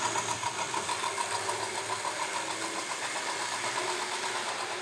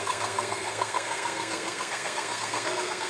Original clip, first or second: first